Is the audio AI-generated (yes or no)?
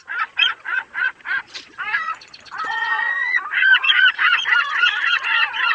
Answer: yes